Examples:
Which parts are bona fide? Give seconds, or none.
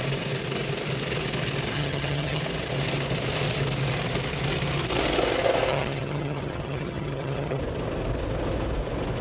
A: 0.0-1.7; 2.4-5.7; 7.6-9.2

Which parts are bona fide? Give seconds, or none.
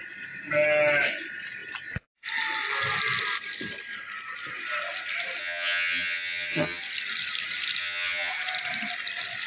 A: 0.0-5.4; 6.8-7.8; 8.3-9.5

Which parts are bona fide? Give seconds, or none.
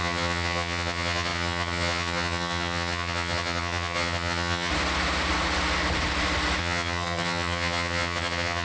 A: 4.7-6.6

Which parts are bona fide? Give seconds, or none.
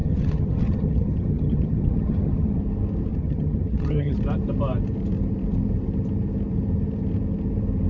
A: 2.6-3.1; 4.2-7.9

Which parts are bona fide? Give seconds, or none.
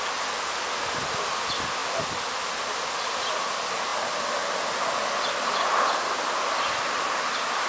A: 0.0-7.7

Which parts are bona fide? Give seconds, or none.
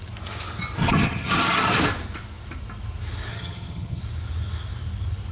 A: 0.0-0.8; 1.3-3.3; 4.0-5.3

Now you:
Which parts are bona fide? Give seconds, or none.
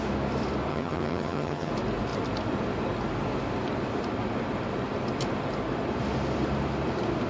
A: 0.0-0.7; 1.7-7.3